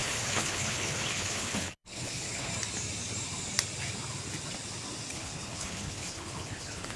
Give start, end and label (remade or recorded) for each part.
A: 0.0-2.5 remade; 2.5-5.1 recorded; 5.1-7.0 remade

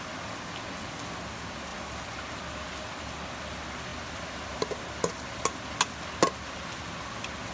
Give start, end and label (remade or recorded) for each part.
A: 0.0-1.7 recorded; 1.7-3.4 remade; 3.4-7.5 recorded

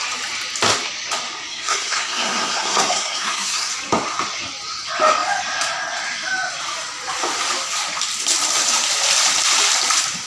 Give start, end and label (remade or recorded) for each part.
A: 0.0-1.5 recorded; 1.5-3.7 remade; 3.7-10.3 recorded